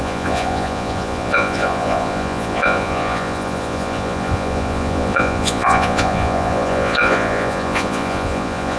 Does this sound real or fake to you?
fake